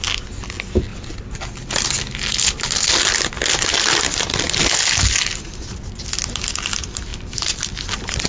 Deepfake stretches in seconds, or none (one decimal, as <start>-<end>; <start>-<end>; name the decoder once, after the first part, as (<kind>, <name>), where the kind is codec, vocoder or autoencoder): none